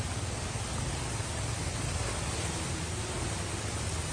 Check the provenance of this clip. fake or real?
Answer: real